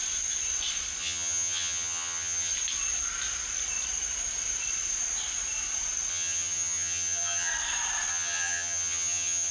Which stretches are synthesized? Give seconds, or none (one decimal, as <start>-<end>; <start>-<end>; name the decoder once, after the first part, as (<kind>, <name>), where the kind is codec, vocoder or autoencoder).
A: 1.0-2.5 (vocoder, HiFi-GAN); 6.1-7.5; 8.1-9.5